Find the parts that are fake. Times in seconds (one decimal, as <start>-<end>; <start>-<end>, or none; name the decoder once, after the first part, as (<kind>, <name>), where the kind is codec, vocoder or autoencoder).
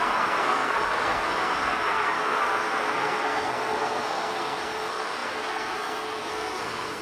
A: 0.0-7.0 (codec, SNAC)